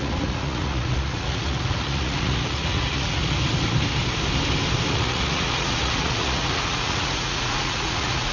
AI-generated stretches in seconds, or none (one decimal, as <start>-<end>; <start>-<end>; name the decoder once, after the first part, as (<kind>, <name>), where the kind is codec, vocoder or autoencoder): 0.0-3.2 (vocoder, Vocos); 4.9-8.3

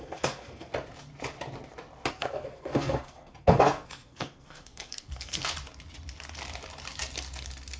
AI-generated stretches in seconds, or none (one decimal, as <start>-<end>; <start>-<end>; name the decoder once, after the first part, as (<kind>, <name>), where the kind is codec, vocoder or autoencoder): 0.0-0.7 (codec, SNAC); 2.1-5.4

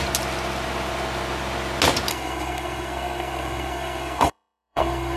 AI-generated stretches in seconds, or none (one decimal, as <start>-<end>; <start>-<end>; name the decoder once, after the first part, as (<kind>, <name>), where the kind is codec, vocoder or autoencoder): 2.1-5.2 (codec, SNAC)

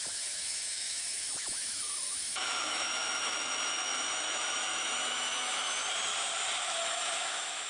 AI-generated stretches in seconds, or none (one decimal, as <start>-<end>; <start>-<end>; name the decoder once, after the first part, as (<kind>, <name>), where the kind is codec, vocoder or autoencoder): 0.0-5.8 (autoencoder, DAC-VAE); 6.6-7.7

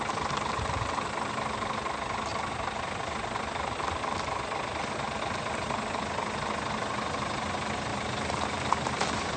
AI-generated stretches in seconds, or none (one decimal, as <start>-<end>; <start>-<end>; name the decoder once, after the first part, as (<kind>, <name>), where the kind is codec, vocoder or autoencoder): 7.9-9.4 (vocoder, BigVGAN v2)